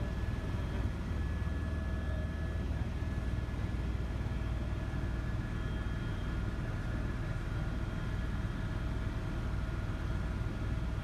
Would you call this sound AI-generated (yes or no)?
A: no